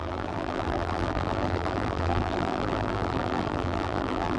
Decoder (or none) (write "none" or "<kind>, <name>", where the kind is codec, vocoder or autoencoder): vocoder, BigVGAN v2